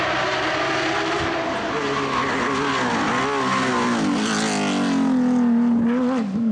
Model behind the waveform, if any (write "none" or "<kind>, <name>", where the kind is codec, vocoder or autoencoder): none